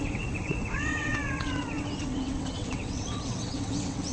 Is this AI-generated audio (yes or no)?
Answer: yes